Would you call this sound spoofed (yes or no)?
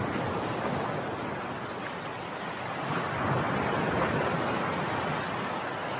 no